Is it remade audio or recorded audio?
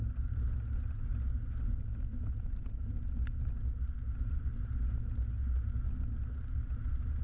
recorded